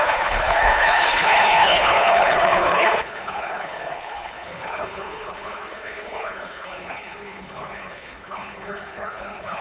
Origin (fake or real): fake